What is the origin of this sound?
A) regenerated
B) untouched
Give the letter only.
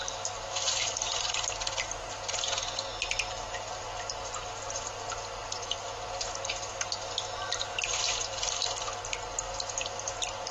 B